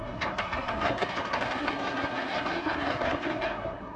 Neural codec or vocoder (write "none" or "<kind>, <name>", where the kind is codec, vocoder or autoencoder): codec, SNAC